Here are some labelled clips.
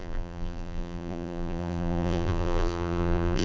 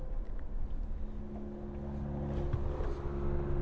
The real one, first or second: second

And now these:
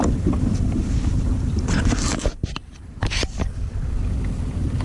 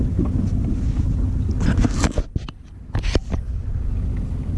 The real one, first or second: second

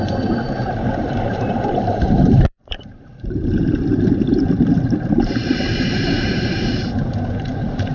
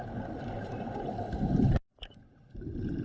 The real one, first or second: second